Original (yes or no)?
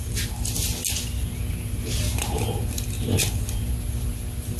yes